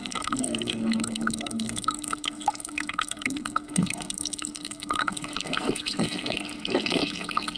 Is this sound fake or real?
fake